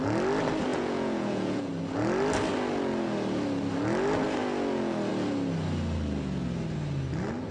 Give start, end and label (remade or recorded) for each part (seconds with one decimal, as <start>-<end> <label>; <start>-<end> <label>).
0.0-0.7 recorded; 0.7-1.7 remade; 1.7-7.5 recorded